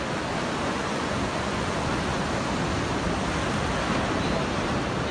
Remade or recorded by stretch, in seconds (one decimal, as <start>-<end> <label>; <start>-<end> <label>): 0.0-0.7 recorded; 0.7-2.2 remade; 2.2-5.1 recorded